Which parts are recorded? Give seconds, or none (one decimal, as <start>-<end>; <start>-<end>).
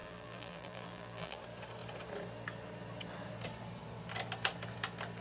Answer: 1.4-5.2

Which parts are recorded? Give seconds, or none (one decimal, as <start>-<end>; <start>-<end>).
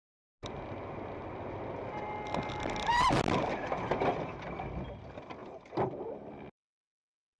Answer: 0.0-5.4; 6.3-7.4